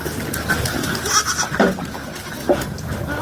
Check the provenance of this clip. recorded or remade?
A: recorded